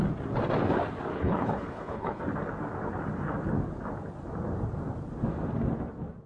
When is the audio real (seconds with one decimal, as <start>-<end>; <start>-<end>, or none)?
0.0-1.1; 2.2-6.3